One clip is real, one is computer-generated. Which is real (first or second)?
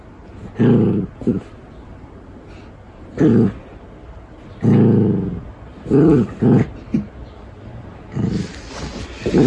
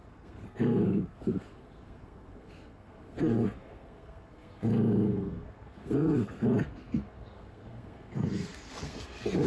first